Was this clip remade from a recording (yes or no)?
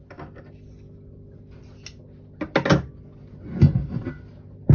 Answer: no